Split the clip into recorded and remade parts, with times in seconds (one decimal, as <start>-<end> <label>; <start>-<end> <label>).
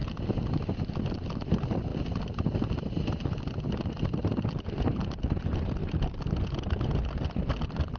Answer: 0.0-0.8 remade; 0.8-8.0 recorded